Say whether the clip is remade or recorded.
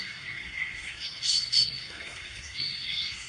remade